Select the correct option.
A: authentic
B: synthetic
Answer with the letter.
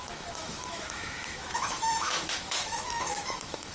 B